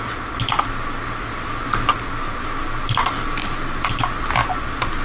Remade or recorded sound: recorded